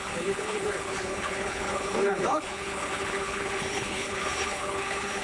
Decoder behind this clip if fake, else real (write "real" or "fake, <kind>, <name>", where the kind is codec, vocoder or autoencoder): fake, codec, HILCodec